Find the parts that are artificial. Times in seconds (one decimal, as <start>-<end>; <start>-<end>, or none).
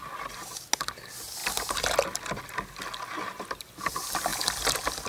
none